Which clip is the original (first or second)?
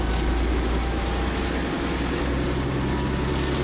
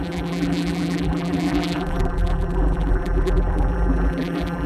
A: first